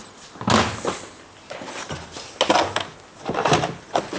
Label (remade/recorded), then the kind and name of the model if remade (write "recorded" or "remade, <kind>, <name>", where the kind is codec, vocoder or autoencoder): recorded